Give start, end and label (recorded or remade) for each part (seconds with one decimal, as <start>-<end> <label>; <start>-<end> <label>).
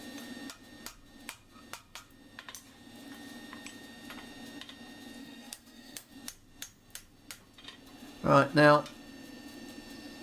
0.0-5.2 recorded; 5.2-6.1 remade; 6.1-10.2 recorded